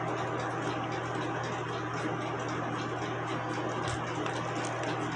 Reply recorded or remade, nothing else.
recorded